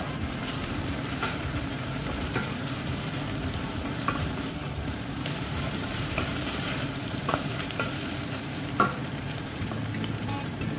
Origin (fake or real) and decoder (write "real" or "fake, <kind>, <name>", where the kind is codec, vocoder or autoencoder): fake, vocoder, BigVGAN v2